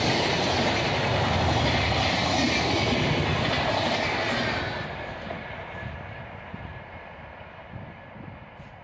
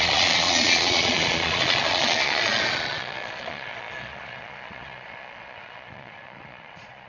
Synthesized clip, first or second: second